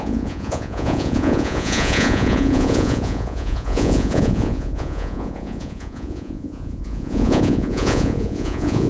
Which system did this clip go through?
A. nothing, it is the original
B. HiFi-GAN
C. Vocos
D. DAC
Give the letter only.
C